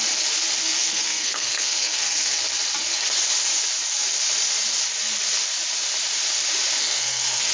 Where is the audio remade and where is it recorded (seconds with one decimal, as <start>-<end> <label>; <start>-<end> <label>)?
0.0-0.6 recorded; 0.6-2.4 remade; 2.4-6.8 recorded; 6.8-7.5 remade